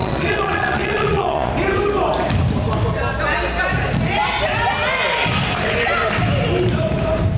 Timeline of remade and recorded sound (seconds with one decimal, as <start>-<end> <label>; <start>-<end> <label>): 0.0-1.5 remade; 1.5-7.4 recorded